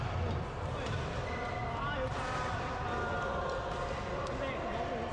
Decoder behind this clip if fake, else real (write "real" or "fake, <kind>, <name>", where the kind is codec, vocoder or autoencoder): real